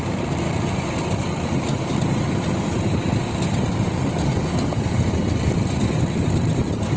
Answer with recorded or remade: recorded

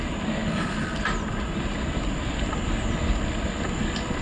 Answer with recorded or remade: recorded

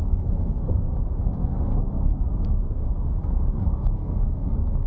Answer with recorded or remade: remade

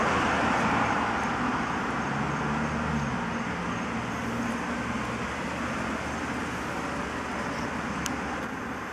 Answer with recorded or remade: recorded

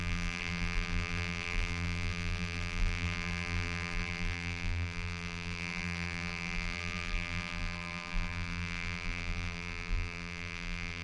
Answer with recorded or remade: remade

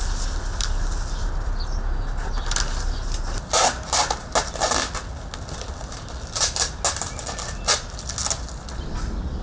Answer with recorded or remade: recorded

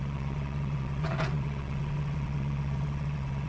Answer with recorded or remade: remade